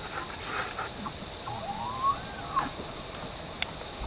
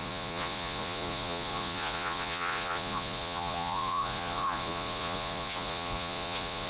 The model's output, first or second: second